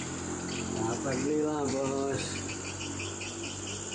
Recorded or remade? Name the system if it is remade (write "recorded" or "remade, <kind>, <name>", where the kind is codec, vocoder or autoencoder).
recorded